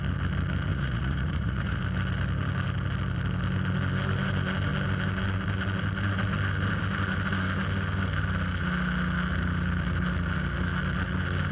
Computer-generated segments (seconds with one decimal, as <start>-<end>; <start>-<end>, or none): 0.7-1.8